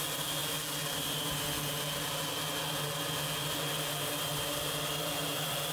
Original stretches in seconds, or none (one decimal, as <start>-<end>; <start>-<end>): 0.0-5.7